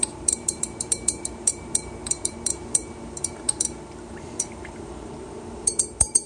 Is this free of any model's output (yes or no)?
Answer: no